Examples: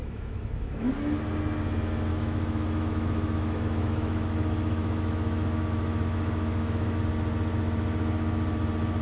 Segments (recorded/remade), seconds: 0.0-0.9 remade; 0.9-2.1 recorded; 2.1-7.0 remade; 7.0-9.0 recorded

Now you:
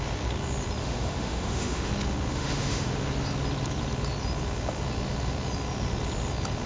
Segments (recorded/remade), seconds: 0.0-0.8 recorded; 0.8-1.9 remade; 1.9-2.3 recorded; 2.3-2.9 remade; 2.9-6.7 recorded

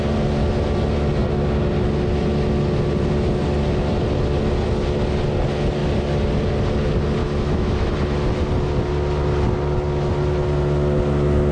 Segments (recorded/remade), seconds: 0.0-7.2 recorded; 7.2-7.9 remade; 7.9-11.5 recorded

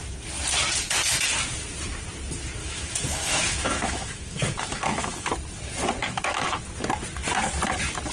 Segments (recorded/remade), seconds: 0.0-2.6 recorded; 2.6-5.3 remade; 5.3-6.0 recorded; 6.0-6.6 remade; 6.6-8.1 recorded

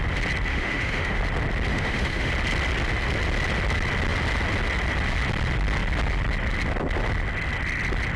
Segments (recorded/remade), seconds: 0.0-0.5 recorded; 0.5-1.2 remade; 1.2-1.7 recorded; 1.7-2.3 remade; 2.3-8.2 recorded

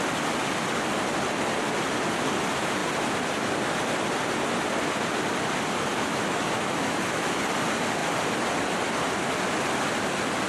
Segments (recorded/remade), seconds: 0.0-5.9 recorded; 5.9-7.4 remade; 7.4-10.5 recorded

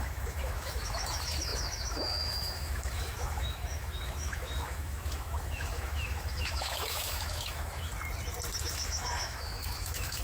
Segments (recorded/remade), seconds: 0.0-7.9 remade; 7.9-8.6 recorded; 8.6-10.2 remade